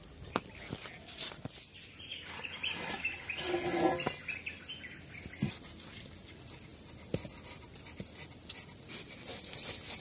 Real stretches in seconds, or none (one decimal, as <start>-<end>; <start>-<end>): 0.0-10.0